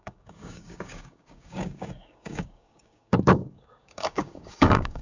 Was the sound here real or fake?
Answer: fake